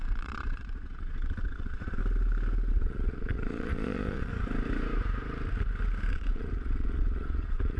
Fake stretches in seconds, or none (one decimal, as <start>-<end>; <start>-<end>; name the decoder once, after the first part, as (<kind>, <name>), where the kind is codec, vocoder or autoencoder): 0.0-2.0 (vocoder, Vocos); 2.7-4.3; 6.1-7.8